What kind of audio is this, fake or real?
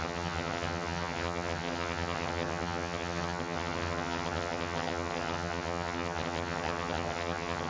fake